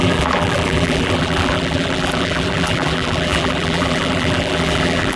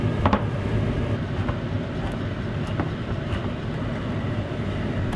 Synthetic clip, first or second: first